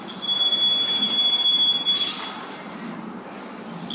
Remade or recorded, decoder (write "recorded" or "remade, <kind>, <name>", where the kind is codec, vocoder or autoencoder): recorded